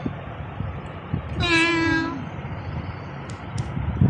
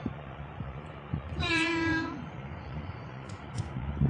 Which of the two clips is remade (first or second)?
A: second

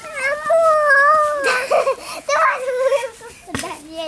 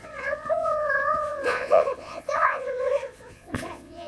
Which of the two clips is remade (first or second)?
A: second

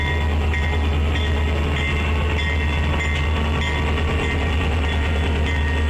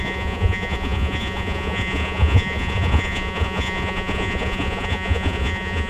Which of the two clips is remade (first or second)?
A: second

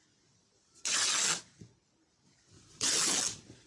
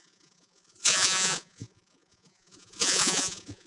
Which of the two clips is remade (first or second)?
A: second